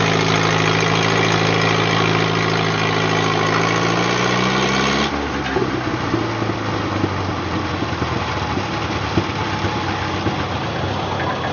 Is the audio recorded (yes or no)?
yes